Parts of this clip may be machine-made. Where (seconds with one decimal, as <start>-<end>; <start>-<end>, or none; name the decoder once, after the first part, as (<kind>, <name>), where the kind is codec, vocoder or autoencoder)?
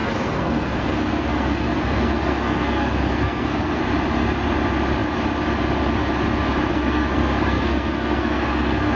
0.0-3.8 (codec, SNAC); 6.7-9.0